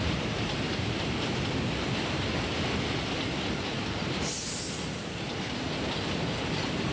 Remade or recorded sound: remade